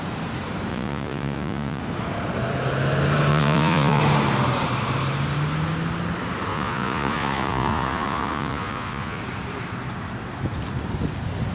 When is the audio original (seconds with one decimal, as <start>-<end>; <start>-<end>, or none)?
0.0-0.7; 1.8-3.3; 4.0-6.5; 9.2-11.5